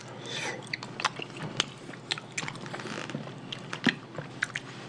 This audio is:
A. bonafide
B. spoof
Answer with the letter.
A